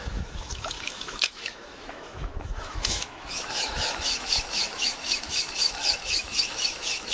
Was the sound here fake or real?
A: fake